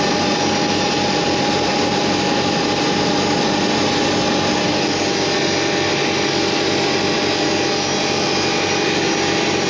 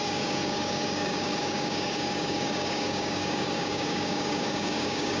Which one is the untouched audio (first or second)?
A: first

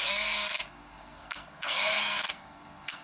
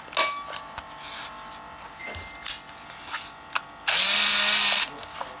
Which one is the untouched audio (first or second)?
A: second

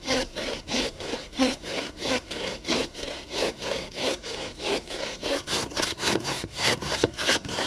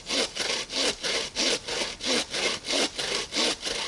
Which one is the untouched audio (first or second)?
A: second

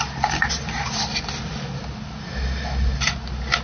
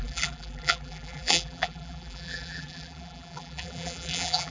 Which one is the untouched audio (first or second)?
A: first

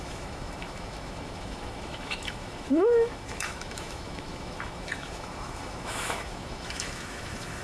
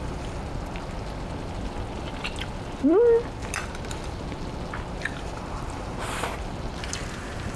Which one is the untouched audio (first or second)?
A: second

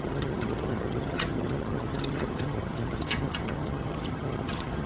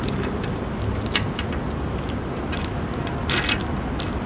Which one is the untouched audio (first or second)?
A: second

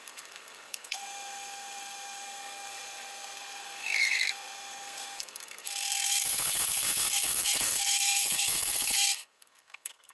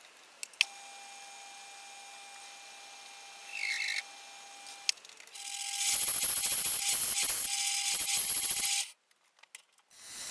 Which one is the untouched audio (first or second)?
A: second